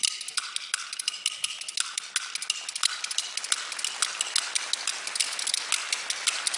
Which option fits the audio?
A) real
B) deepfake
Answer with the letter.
A